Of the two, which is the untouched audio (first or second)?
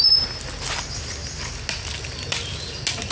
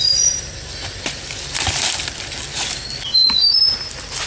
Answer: first